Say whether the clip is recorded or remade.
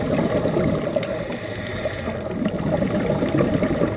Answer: recorded